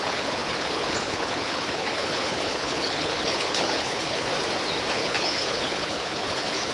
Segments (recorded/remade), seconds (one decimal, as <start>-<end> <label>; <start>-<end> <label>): 0.0-4.3 remade; 4.3-4.9 recorded; 4.9-6.7 remade